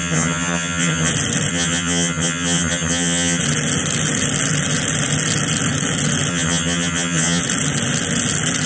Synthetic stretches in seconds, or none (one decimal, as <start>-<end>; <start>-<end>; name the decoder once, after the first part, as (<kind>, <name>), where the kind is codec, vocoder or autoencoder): 0.0-1.1 (vocoder, HiFi-GAN); 1.5-3.4; 6.3-7.4